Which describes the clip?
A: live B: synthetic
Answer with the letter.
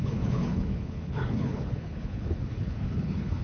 B